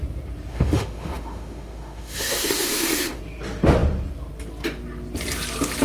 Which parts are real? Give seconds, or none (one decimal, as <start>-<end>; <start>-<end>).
0.0-0.5; 3.2-5.8